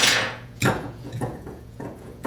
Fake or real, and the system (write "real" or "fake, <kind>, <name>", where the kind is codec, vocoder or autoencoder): fake, vocoder, Vocos